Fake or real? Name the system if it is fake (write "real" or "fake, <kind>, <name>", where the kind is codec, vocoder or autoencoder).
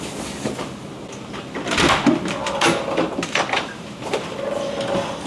real